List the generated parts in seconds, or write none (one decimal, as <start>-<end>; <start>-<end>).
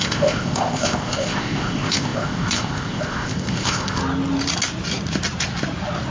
0.0-4.0